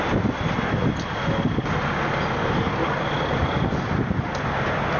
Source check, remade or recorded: recorded